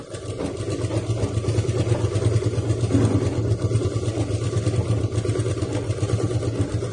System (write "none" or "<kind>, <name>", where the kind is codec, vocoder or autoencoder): none